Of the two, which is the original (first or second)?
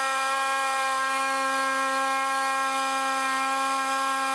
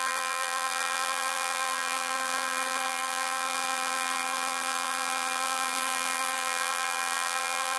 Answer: first